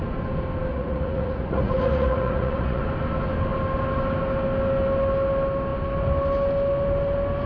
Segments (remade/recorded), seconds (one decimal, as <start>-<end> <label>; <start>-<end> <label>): 0.0-0.7 recorded; 0.7-2.8 remade; 2.8-7.5 recorded